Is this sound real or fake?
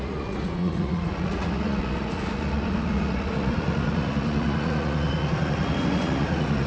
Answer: fake